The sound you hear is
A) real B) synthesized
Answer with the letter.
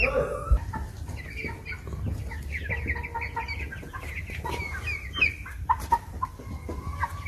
A